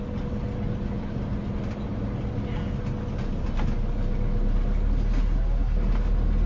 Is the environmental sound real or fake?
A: real